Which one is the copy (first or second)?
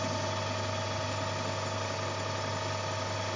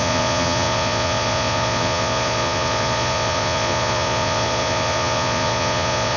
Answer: second